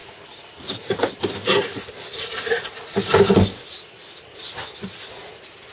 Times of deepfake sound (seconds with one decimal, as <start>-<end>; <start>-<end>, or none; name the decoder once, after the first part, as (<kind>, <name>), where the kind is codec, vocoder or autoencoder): 0.0-2.9 (vocoder, BigVGAN v2)